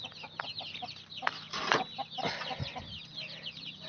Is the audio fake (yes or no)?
no